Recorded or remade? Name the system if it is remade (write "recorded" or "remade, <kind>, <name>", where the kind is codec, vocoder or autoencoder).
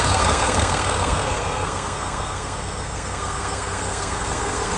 remade, codec, SNAC